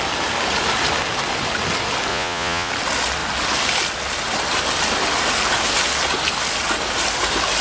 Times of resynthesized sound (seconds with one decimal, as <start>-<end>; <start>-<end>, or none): 2.1-2.7